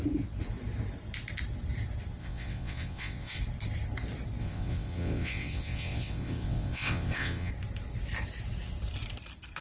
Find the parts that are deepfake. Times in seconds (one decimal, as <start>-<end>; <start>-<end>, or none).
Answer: 2.2-3.4; 4.4-7.5